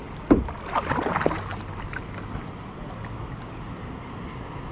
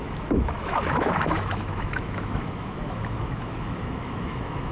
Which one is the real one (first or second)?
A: first